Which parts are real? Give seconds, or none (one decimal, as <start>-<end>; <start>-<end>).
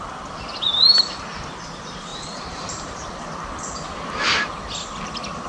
0.0-0.7; 1.4-2.1; 3.2-5.5